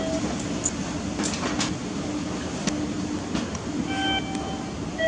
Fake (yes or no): no